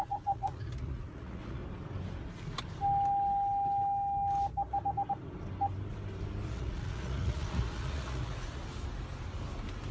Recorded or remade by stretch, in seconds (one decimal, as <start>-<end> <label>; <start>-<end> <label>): 0.0-1.6 remade; 1.6-6.5 recorded; 6.5-8.6 remade; 8.6-9.9 recorded